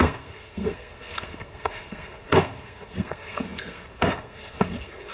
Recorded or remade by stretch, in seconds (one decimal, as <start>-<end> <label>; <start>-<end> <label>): 0.0-5.1 remade